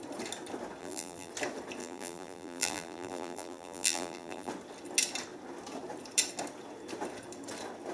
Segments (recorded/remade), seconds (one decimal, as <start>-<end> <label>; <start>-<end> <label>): 0.0-0.8 recorded; 0.8-1.3 remade; 1.3-1.8 recorded; 1.8-4.5 remade; 4.5-7.9 recorded